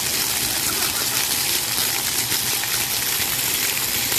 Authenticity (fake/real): real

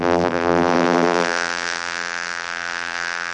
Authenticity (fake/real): fake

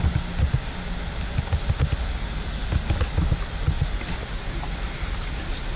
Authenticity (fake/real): real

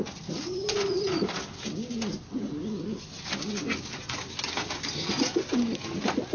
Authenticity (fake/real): real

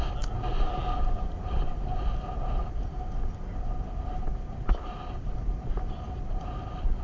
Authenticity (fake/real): real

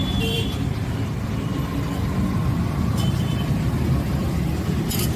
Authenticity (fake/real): fake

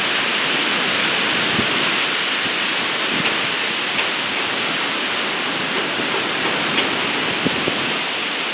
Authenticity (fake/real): real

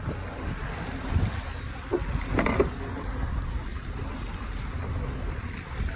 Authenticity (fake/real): real